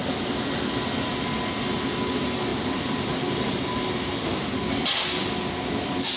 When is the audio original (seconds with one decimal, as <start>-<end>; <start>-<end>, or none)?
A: 0.0-2.5; 4.6-6.2